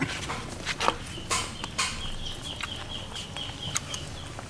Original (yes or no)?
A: yes